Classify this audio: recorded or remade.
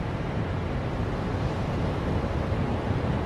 remade